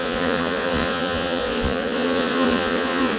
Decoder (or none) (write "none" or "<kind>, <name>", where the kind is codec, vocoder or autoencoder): vocoder, Vocos